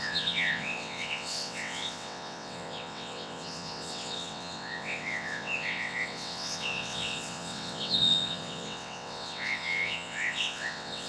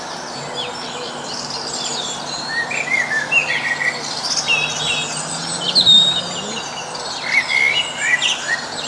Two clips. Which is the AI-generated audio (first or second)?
first